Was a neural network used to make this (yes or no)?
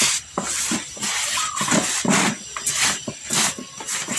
no